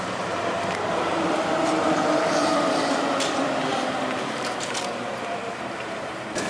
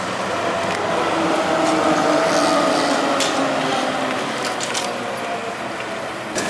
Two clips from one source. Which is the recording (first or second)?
second